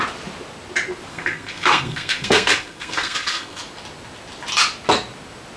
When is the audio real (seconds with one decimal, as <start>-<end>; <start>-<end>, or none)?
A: 0.0-1.1; 3.6-5.6